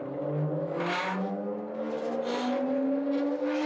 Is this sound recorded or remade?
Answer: recorded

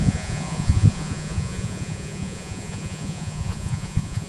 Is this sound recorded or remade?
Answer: remade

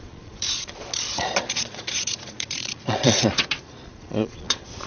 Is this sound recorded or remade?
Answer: remade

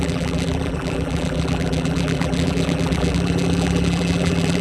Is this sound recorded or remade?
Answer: remade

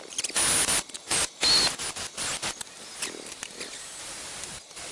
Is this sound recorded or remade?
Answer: recorded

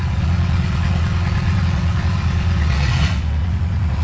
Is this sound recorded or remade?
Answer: remade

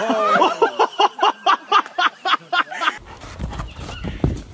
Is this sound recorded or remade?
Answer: recorded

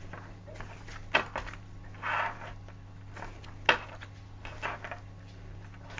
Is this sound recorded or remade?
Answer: recorded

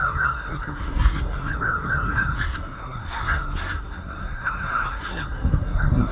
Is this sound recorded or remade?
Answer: remade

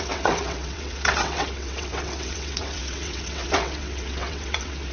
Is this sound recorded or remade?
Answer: remade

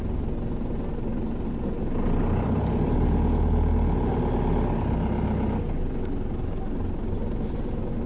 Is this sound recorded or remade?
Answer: recorded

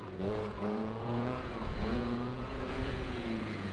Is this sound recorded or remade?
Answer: remade